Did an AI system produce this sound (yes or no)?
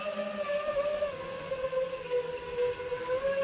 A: no